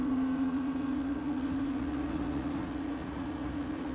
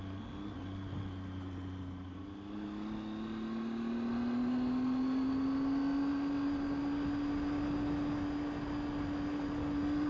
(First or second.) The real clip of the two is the second